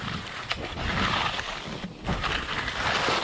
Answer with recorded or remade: recorded